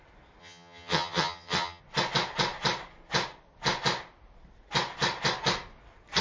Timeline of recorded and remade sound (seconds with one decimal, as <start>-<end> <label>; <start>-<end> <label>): 0.0-0.4 recorded; 0.4-1.8 remade; 1.8-6.2 recorded